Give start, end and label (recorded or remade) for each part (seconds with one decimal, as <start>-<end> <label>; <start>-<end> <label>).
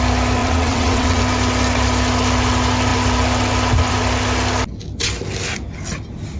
0.0-0.4 recorded; 0.4-1.2 remade; 1.2-6.4 recorded